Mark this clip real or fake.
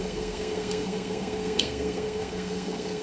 fake